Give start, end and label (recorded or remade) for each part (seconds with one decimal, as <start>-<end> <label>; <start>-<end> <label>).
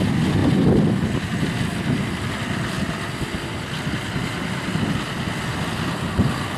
0.0-6.6 recorded